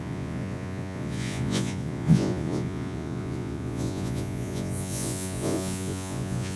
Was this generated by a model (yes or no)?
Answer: yes